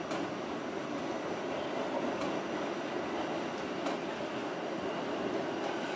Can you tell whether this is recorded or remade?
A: recorded